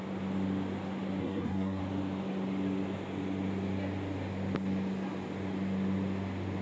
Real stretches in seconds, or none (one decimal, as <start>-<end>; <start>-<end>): 0.0-1.2; 1.8-6.6